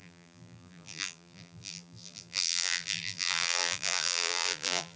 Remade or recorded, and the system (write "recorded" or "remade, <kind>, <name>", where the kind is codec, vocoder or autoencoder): remade, vocoder, BigVGAN v2